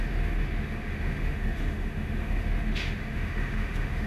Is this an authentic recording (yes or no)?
no